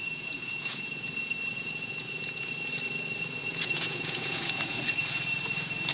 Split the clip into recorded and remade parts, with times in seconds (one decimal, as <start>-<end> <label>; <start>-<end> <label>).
0.0-1.1 remade; 1.1-1.5 recorded; 1.5-2.5 remade; 2.5-3.4 recorded; 3.4-4.8 remade; 4.8-5.9 recorded